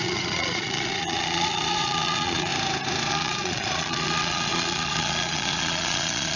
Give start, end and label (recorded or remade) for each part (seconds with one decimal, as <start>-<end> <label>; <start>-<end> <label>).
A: 0.0-2.5 remade; 2.5-3.1 recorded; 3.1-6.4 remade